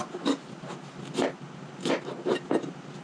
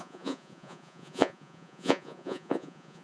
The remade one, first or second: second